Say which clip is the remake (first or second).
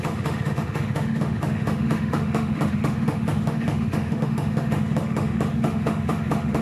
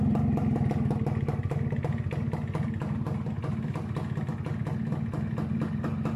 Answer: first